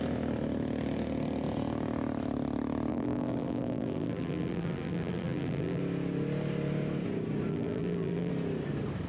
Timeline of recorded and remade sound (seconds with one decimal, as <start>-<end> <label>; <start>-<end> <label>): 0.0-2.9 recorded; 2.9-5.8 remade; 5.8-7.5 recorded; 7.5-8.3 remade; 8.3-9.1 recorded